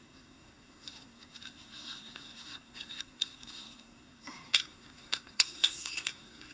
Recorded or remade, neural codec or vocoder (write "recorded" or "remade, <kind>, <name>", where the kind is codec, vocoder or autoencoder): remade, codec, SNAC